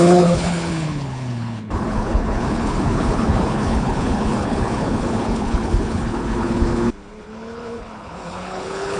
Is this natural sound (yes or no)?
no